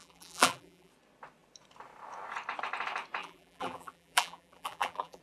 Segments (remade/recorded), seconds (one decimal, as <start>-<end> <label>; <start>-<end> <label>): 0.0-0.9 remade; 0.9-3.2 recorded; 3.2-5.2 remade